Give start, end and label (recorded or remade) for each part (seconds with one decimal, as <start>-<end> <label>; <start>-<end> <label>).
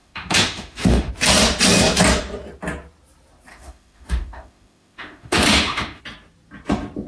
0.0-1.1 remade; 1.1-3.5 recorded; 3.5-6.0 remade; 6.0-7.1 recorded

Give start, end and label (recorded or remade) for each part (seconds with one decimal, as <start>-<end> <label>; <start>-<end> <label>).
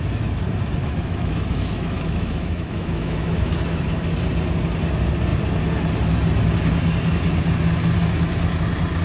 0.0-0.8 recorded; 0.8-3.8 remade; 3.8-9.0 recorded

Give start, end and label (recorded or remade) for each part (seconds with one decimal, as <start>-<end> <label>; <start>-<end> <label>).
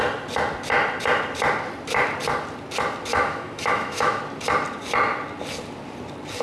0.0-3.1 recorded; 3.1-4.2 remade; 4.2-6.4 recorded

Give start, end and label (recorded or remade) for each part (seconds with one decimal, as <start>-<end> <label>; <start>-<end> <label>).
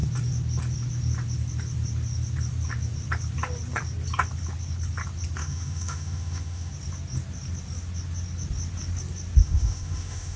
0.0-5.4 recorded; 5.4-6.7 remade; 6.7-9.4 recorded; 9.4-10.4 remade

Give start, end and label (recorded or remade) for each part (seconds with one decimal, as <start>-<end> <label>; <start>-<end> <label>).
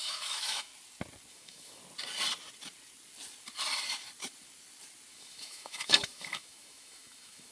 0.0-0.7 remade; 0.7-1.3 recorded; 1.3-1.8 remade; 1.8-5.1 recorded; 5.1-7.5 remade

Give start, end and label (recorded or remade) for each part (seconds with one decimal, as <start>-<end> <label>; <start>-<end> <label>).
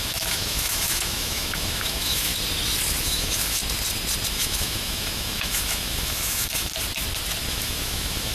0.0-2.3 remade; 2.3-3.0 recorded; 3.0-3.6 remade; 3.6-4.3 recorded; 4.3-6.7 remade; 6.7-7.5 recorded; 7.5-8.3 remade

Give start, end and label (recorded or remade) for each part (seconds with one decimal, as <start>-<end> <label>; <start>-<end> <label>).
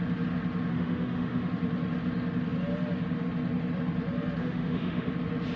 0.0-0.7 recorded; 0.7-1.5 remade; 1.5-4.4 recorded; 4.4-5.1 remade; 5.1-5.6 recorded